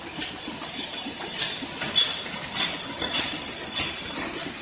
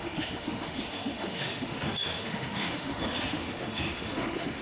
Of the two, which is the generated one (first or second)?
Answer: second